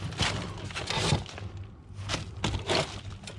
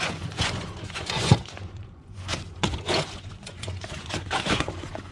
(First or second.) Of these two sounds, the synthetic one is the second